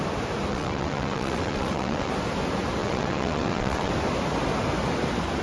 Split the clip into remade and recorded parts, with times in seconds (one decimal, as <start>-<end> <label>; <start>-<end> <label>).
0.0-0.5 recorded; 0.5-2.1 remade; 2.1-2.8 recorded; 2.8-3.9 remade; 3.9-5.4 recorded